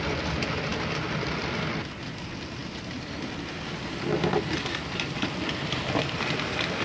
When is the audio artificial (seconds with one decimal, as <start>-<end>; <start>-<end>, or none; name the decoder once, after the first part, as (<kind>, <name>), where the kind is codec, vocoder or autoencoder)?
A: none